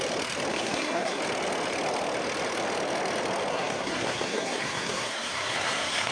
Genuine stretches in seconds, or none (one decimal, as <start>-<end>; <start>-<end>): 0.0-0.5; 1.2-3.5